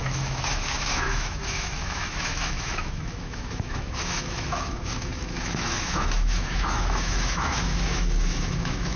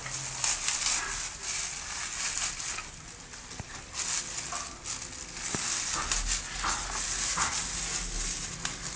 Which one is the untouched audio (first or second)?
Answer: second